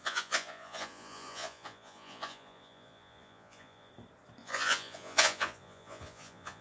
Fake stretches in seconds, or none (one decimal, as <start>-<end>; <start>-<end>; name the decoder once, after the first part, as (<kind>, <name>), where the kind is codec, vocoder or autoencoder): 0.0-3.9 (vocoder, Vocos); 4.4-6.6